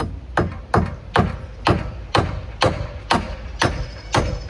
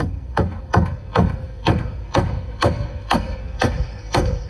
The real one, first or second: first